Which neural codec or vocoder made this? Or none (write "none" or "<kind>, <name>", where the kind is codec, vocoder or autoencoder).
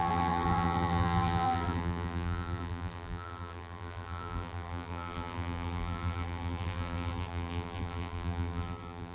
vocoder, BigVGAN v2